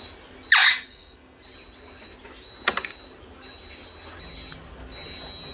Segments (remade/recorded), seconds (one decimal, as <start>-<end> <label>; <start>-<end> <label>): 0.0-0.6 recorded; 0.6-1.4 remade; 1.4-5.5 recorded